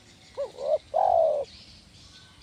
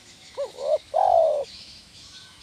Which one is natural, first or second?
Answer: first